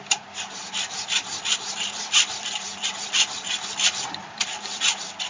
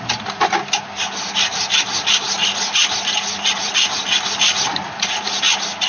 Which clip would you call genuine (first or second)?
second